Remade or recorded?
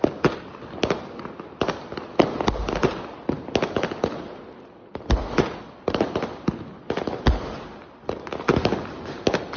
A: recorded